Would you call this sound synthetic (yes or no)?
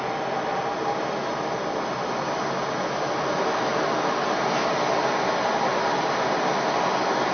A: no